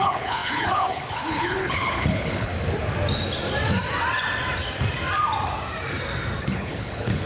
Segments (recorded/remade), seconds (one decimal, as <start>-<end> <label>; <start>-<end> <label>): 0.0-2.5 remade; 2.5-6.4 recorded; 6.4-7.3 remade